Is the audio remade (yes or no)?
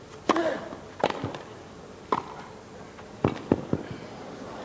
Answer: no